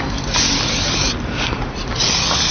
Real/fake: real